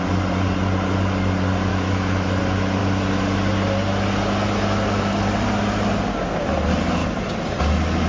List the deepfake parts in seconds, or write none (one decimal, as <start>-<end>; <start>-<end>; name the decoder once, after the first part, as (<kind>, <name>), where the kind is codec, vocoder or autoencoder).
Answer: 1.7-2.4 (autoencoder, DAC-VAE)